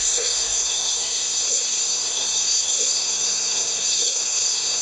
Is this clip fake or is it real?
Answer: fake